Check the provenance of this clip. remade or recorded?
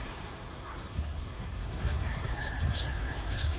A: remade